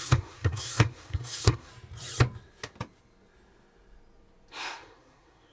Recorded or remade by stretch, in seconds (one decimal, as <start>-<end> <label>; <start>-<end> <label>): 0.0-1.7 remade; 1.7-4.5 recorded; 4.5-5.5 remade